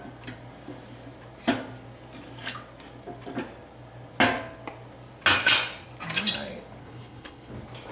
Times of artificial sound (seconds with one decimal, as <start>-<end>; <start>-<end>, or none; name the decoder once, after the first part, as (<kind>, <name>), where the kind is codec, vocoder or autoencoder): 6.8-7.5 (codec, HILCodec)

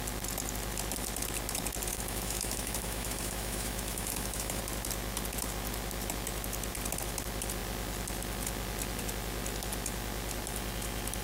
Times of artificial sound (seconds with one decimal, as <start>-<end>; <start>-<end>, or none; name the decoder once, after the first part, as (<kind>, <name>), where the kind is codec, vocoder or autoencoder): 1.9-4.6 (autoencoder, DAC-VAE)

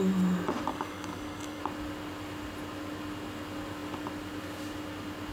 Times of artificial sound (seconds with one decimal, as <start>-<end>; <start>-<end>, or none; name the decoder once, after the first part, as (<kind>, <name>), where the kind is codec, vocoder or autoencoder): 0.7-1.6 (codec, DAC)

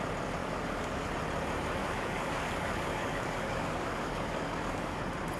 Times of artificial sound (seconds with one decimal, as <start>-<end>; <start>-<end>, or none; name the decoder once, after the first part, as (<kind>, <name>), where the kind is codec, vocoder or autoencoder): 0.4-1.1 (codec, DAC); 1.8-5.0

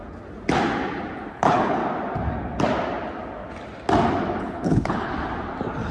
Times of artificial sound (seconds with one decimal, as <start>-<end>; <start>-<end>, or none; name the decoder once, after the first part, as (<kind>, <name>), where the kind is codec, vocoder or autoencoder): 1.3-1.8 (codec, HILCodec); 4.4-5.1

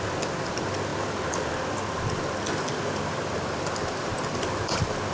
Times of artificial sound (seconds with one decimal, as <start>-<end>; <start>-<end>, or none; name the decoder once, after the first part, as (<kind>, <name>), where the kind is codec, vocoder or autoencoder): none

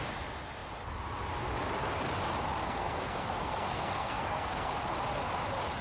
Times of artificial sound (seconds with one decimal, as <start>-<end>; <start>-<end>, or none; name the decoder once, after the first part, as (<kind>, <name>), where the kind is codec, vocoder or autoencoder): 2.6-4.7 (codec, SNAC)

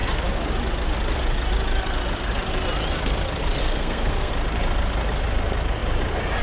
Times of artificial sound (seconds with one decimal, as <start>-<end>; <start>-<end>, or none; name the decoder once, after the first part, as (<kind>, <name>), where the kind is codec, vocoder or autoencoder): 3.6-4.3 (codec, SNAC)